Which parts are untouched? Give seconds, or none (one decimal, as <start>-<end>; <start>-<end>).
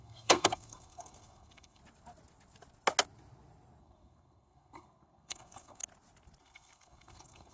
1.8-3.8; 5.8-6.4